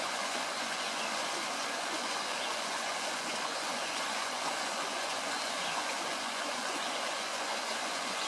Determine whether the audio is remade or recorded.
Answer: remade